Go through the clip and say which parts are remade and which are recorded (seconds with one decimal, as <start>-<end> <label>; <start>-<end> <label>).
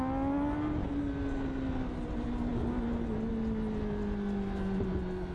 0.0-5.3 recorded